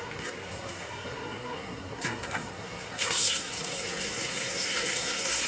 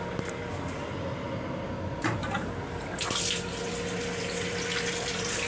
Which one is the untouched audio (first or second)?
second